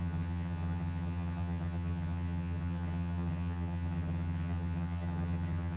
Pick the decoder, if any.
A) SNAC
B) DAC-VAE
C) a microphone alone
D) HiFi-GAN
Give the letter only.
D